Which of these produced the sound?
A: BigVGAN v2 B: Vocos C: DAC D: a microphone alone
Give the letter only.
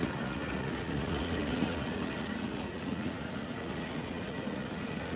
B